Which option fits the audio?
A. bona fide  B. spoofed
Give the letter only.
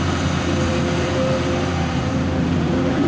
B